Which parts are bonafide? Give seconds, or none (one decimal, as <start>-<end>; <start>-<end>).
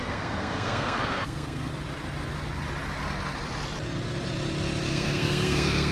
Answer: 1.7-4.9